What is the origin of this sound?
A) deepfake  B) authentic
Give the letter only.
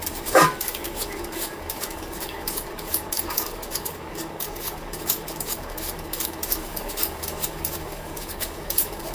A